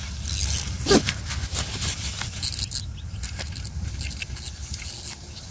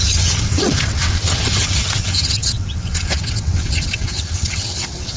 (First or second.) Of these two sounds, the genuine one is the first